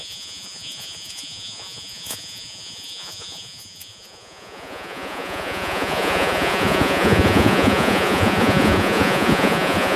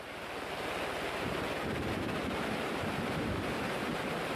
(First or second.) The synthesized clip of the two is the first